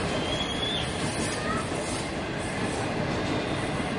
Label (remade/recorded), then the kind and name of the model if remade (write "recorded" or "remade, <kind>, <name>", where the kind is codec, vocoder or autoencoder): recorded